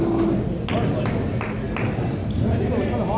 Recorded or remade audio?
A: recorded